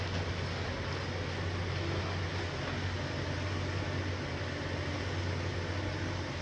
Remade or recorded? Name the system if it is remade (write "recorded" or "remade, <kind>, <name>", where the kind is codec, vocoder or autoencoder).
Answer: recorded